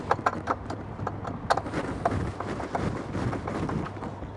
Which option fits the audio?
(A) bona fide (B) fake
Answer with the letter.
A